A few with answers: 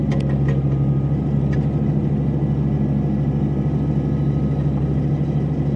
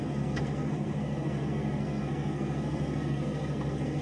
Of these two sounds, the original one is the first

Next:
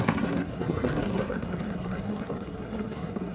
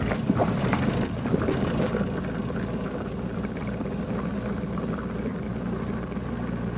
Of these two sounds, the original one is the second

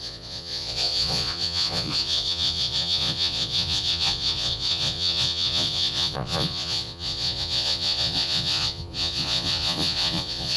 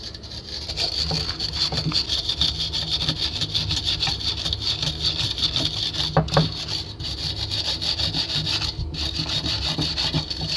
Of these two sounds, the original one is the second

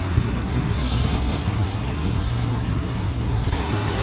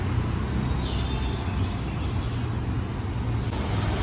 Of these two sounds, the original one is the second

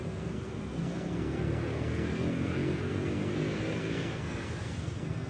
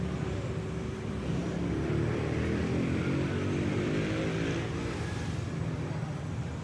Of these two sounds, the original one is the second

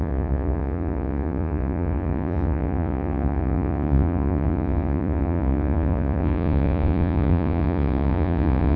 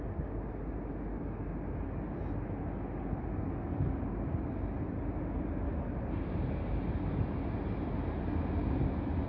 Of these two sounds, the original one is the second